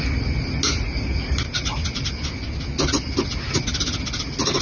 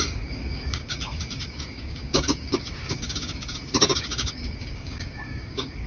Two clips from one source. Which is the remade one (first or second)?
second